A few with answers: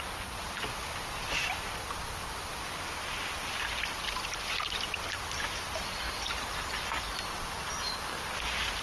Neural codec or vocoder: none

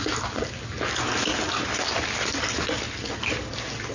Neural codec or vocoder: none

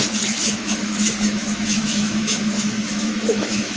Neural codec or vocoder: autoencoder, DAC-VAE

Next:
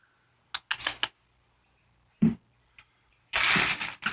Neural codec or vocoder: none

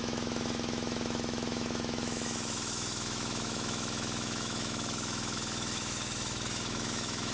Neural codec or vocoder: autoencoder, DAC-VAE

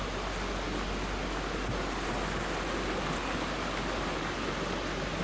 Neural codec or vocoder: none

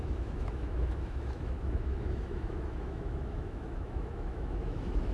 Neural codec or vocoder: autoencoder, DAC-VAE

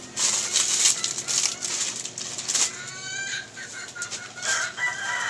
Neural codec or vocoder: none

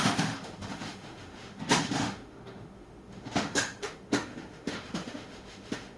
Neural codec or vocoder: autoencoder, DAC-VAE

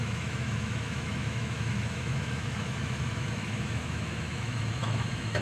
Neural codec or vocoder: autoencoder, DAC-VAE